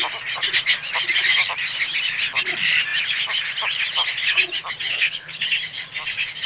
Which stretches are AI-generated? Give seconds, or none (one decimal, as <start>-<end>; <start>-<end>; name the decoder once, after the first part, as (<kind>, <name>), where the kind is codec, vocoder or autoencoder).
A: 4.9-5.4 (codec, HILCodec)